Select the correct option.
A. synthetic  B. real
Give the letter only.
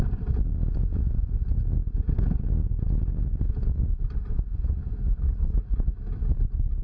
B